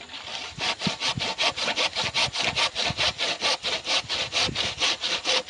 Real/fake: real